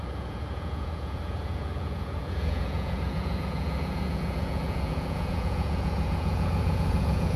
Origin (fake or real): fake